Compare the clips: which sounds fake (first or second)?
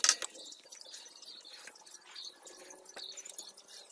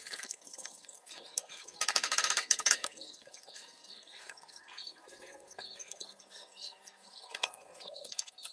second